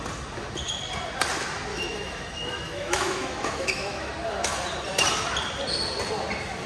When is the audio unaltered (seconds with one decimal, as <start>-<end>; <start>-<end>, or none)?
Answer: 0.0-1.7; 4.1-6.7